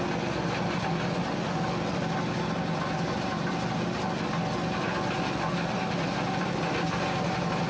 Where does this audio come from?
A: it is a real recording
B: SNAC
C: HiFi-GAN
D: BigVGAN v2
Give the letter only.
A